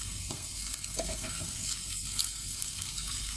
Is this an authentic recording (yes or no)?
no